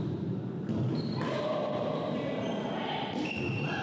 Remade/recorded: recorded